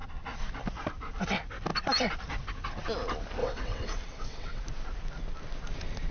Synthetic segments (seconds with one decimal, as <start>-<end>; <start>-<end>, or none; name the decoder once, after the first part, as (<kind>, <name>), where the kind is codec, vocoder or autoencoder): 3.4-4.6 (vocoder, WaveNeXt)